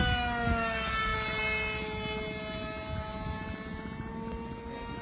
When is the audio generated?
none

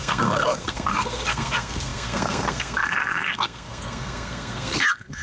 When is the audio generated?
0.0-5.2 (codec, SNAC)

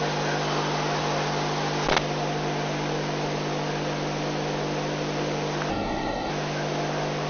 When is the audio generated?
5.7-6.3 (codec, SNAC)

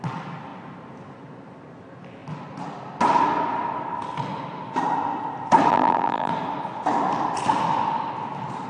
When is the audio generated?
5.7-6.3 (vocoder, BigVGAN v2)

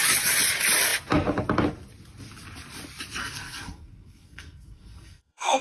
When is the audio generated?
3.2-5.6 (codec, SNAC)

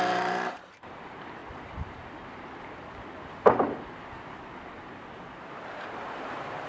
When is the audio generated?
0.0-1.4 (vocoder, BigVGAN v2); 5.4-6.7